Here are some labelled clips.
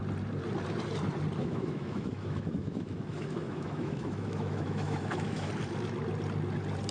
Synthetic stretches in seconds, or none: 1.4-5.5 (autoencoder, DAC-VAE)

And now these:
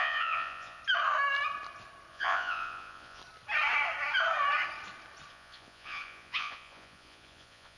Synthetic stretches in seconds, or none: 0.0-0.8 (vocoder, Vocos); 2.1-3.2; 5.3-7.8

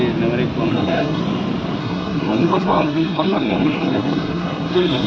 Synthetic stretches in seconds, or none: 0.7-1.2 (codec, SNAC); 1.8-5.1

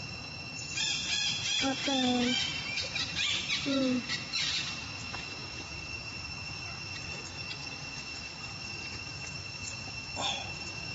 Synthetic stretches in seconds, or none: 0.0-1.8 (vocoder, Vocos); 2.6-10.9

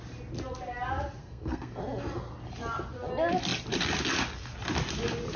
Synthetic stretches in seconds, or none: 1.2-1.8 (codec, SNAC)

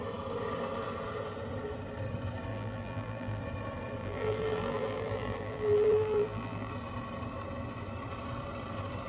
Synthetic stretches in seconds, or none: 2.5-3.4 (vocoder, BigVGAN v2); 4.0-6.7